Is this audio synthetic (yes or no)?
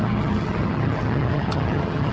yes